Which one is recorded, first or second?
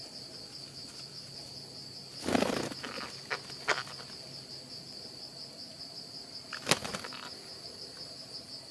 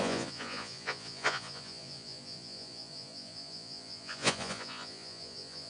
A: first